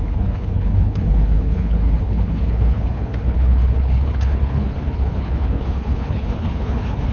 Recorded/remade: remade